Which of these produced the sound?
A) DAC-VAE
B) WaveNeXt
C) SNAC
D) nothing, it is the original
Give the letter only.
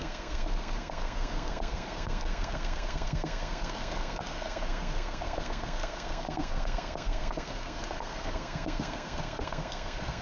C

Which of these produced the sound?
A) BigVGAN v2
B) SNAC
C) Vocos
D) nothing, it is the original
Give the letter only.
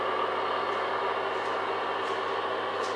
D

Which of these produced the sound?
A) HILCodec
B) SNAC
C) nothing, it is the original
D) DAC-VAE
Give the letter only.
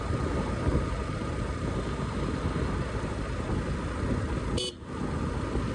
C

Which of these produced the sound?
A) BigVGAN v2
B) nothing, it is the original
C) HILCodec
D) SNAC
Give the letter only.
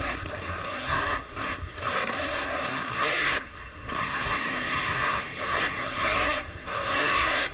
D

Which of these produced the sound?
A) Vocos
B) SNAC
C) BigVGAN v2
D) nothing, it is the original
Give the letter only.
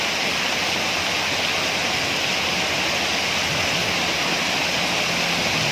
D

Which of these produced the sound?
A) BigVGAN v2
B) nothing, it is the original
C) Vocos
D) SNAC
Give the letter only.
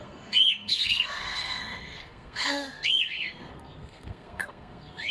D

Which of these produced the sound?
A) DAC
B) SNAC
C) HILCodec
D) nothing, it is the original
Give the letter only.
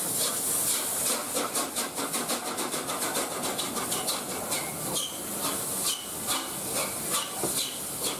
D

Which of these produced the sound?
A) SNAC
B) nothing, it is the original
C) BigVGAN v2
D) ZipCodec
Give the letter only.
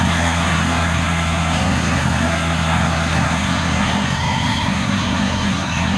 A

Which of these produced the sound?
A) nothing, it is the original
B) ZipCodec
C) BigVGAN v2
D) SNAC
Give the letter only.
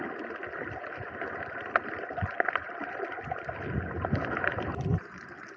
A